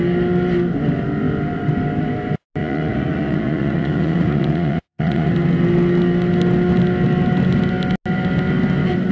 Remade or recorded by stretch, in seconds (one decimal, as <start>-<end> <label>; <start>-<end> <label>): 0.0-2.6 recorded; 2.6-5.3 remade; 5.3-9.1 recorded